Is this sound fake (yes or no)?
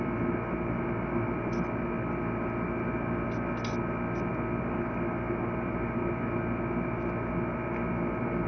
no